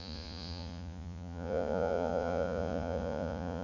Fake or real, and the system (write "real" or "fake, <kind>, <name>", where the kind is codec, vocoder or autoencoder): fake, vocoder, Vocos